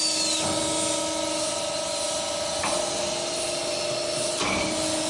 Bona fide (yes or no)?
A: yes